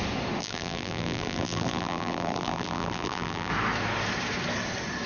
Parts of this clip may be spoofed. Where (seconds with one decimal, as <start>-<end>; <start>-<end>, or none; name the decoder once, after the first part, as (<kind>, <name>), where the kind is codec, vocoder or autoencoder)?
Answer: 0.4-3.5 (vocoder, BigVGAN v2)